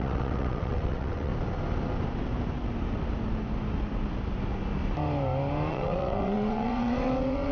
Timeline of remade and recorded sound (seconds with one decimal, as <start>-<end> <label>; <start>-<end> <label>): 0.0-1.3 remade; 1.3-5.7 recorded; 5.7-7.5 remade